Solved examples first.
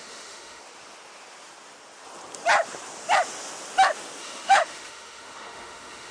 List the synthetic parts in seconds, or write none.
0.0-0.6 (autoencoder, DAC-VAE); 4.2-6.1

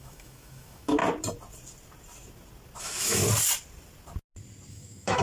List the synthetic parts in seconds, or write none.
0.0-1.0 (autoencoder, DAC-VAE); 2.8-3.2; 4.7-5.2

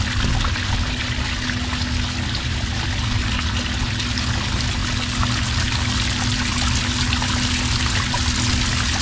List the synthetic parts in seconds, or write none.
none

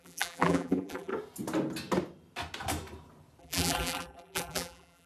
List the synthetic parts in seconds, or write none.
0.0-1.1 (vocoder, BigVGAN v2); 3.4-5.1

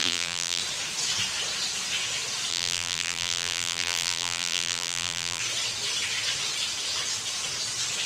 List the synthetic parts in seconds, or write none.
0.0-0.6 (vocoder, BigVGAN v2); 2.5-5.4